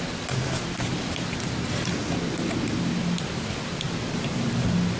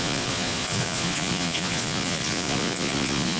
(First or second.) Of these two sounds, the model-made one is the second